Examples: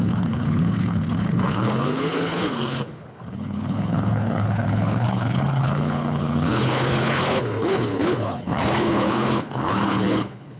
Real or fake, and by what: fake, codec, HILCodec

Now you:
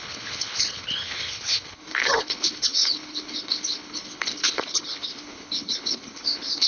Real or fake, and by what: fake, codec, HILCodec